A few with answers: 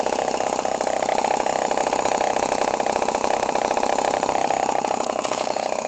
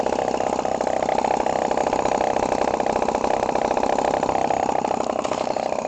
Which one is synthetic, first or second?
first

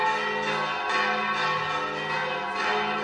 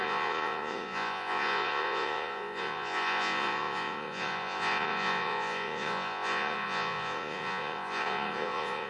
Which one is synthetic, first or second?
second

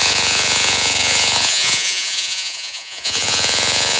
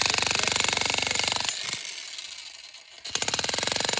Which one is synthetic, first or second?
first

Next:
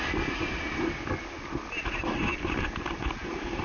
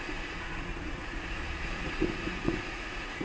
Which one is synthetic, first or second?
second